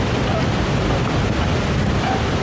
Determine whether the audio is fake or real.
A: real